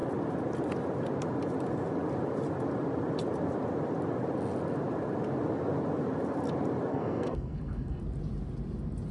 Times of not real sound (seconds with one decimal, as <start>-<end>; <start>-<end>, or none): 6.9-8.0